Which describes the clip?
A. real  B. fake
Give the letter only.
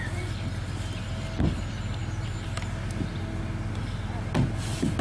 A